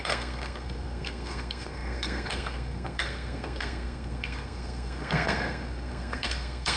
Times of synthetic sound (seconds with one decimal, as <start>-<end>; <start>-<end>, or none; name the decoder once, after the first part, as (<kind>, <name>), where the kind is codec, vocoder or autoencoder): 0.0-6.8 (codec, SNAC)